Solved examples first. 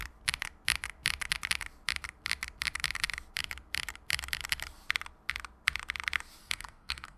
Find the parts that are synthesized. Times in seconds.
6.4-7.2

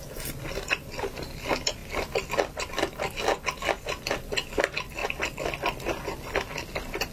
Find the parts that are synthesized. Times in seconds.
none

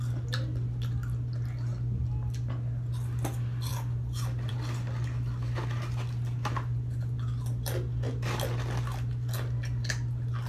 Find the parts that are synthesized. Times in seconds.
none

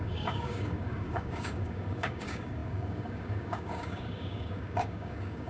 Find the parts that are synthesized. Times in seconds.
0.0-5.5

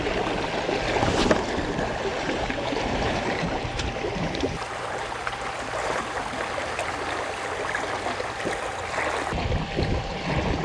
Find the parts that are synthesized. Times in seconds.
2.1-6.0

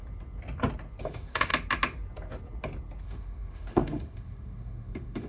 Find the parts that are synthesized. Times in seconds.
1.0-1.5; 3.0-5.3